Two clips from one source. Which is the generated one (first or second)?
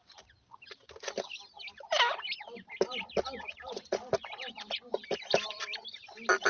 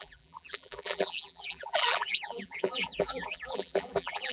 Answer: second